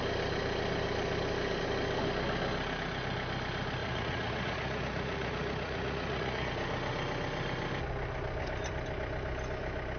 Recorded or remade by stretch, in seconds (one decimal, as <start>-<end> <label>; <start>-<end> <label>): 0.0-3.8 recorded; 3.8-6.5 remade; 6.5-10.0 recorded